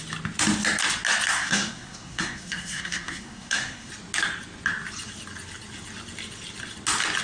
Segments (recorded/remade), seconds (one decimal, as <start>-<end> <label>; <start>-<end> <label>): 0.0-1.3 recorded; 1.3-3.9 remade; 3.9-7.2 recorded